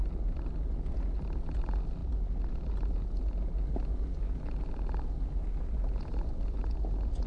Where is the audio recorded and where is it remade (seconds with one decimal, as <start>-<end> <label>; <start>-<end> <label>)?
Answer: 0.0-7.3 recorded